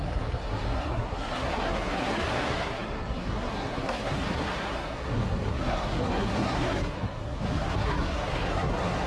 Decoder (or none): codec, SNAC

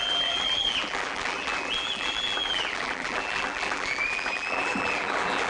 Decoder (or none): vocoder, BigVGAN v2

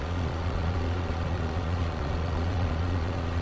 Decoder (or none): vocoder, Vocos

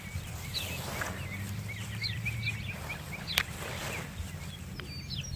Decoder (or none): none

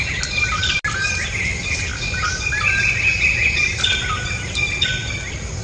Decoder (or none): none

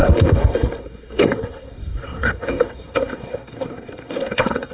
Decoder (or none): codec, SNAC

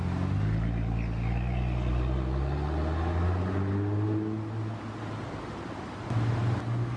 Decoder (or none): none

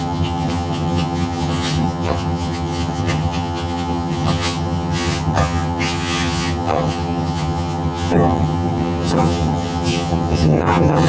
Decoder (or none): vocoder, HiFi-GAN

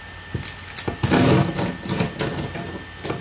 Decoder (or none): none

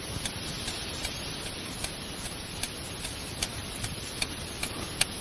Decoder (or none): vocoder, BigVGAN v2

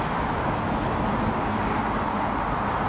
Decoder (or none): none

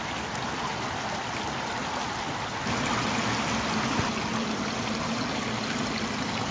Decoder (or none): none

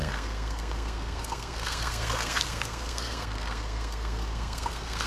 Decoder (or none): codec, SNAC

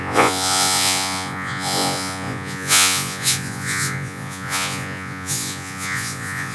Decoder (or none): vocoder, Vocos